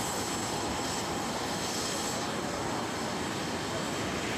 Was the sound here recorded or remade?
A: recorded